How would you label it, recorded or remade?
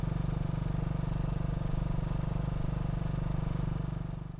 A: recorded